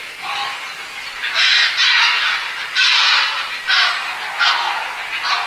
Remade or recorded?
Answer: recorded